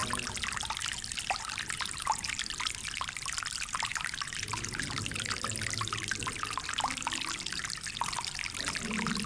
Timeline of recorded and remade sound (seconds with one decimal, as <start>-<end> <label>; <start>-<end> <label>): 0.0-9.3 recorded